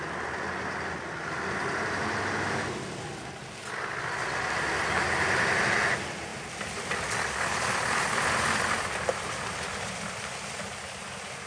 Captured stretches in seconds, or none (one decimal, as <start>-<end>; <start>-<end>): 0.0-11.5